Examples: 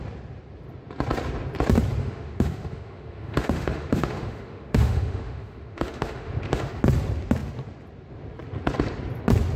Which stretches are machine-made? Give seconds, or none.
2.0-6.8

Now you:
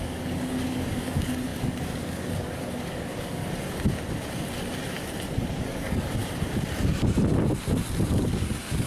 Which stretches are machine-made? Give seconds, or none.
0.0-3.4; 5.5-6.2; 8.0-8.9

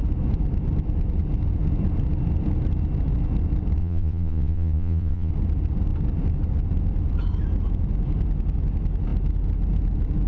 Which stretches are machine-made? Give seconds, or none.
3.8-5.3

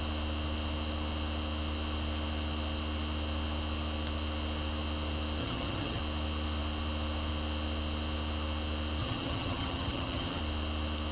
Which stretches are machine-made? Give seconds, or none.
5.4-6.0; 9.0-10.4

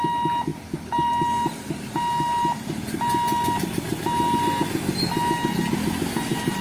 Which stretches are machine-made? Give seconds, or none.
none